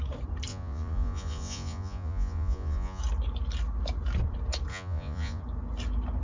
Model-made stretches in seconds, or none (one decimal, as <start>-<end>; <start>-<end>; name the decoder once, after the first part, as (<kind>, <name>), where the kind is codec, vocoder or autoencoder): 0.5-3.0 (vocoder, Vocos); 4.7-5.4